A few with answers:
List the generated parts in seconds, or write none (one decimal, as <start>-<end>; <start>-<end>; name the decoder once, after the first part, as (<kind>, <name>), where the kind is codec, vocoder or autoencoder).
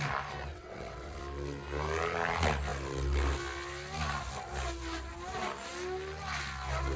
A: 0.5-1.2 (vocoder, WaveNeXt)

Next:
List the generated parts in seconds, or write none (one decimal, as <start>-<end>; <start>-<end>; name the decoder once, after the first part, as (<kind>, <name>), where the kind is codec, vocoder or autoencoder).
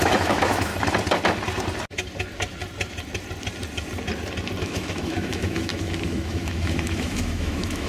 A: 0.0-0.7 (autoencoder, DAC-VAE); 4.6-7.9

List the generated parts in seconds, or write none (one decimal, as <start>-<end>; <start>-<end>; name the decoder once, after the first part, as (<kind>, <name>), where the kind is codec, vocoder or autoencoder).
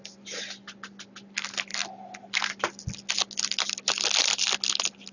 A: none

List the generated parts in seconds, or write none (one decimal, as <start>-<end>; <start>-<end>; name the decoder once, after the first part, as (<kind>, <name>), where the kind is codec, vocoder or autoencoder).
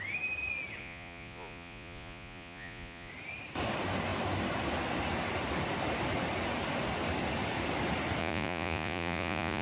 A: 0.8-3.1 (vocoder, Vocos); 8.2-9.6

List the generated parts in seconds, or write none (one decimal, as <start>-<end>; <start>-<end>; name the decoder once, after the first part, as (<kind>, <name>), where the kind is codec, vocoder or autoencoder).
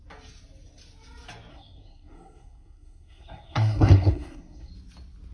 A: 1.5-4.7 (codec, SNAC)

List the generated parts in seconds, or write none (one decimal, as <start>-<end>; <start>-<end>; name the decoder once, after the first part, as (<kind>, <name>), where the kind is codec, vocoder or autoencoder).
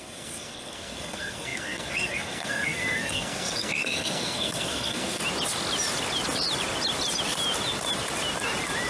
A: 0.0-5.2 (codec, SNAC)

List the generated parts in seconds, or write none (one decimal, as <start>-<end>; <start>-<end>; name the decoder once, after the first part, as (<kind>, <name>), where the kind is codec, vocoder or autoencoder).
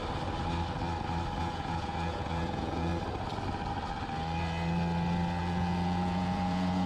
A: 1.4-2.9 (vocoder, Vocos); 5.4-6.9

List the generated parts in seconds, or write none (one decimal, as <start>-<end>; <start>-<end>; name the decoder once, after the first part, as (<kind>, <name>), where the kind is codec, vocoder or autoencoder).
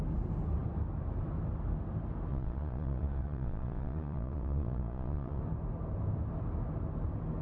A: 2.3-5.4 (vocoder, Vocos)